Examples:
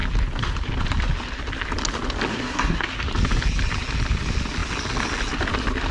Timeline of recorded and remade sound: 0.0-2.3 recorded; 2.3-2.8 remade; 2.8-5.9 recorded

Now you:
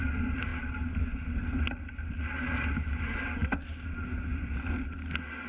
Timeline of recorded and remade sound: 0.0-5.5 recorded

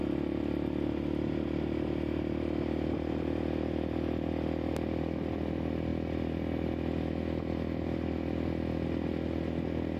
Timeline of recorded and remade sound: 0.0-10.0 recorded

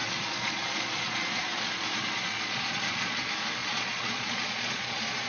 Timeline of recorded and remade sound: 0.0-3.2 remade; 3.2-3.6 recorded; 3.6-5.3 remade

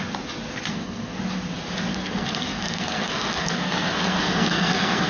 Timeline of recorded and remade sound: 0.0-0.7 recorded; 0.7-1.2 remade; 1.2-1.9 recorded; 1.9-5.1 remade

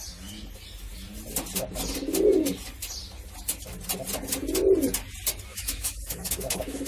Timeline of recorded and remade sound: 0.0-5.5 recorded; 5.5-6.9 remade

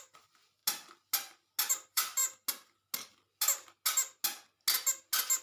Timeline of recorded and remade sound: 0.0-0.6 remade; 0.6-1.7 recorded; 1.7-2.2 remade; 2.2-5.4 recorded